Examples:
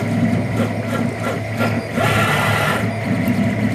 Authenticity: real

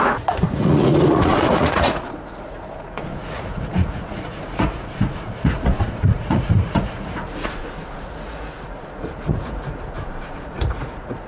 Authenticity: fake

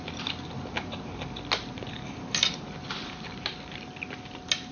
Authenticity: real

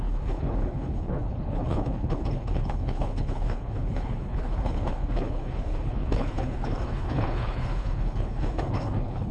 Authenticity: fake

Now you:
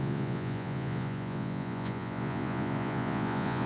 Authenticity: fake